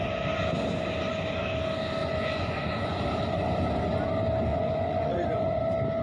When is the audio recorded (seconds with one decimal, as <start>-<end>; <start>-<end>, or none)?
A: 0.0-2.0; 3.0-4.5; 5.6-6.0

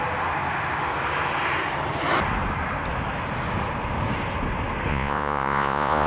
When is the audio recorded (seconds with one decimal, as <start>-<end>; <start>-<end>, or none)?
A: 0.0-4.9

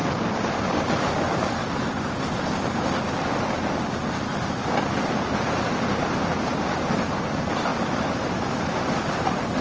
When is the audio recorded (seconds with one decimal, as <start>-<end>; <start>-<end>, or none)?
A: 0.0-9.6